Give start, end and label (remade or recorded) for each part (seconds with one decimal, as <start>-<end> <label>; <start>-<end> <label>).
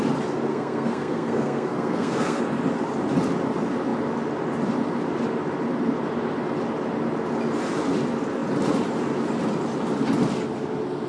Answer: 0.0-0.5 recorded; 0.5-2.4 remade; 2.4-11.1 recorded